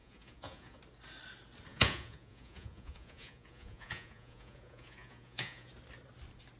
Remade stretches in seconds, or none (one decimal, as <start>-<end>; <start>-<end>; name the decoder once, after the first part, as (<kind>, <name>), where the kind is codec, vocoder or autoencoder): 0.0-0.8 (vocoder, Vocos); 1.7-5.7